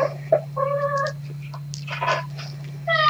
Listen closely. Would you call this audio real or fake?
real